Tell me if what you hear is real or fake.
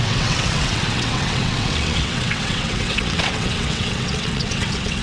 fake